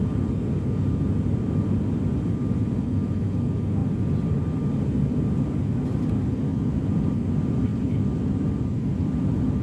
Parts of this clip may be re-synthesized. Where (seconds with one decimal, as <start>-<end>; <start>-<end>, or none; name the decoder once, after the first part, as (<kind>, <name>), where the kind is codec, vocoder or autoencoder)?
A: 3.8-4.6 (vocoder, BigVGAN v2); 6.5-7.3; 7.7-9.0